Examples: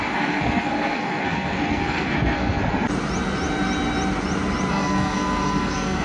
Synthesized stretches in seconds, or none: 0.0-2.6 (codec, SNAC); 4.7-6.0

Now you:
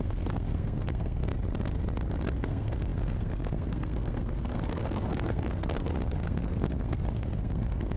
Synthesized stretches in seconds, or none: 0.0-1.3 (codec, SNAC); 2.4-8.0

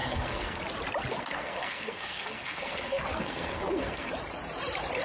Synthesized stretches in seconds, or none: 0.0-0.6 (codec, SNAC); 1.1-4.1